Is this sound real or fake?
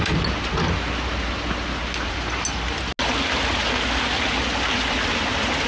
real